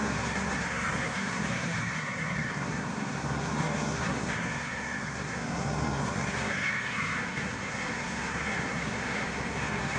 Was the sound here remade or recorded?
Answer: remade